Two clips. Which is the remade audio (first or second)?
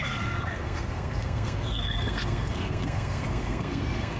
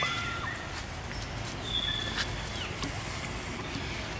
first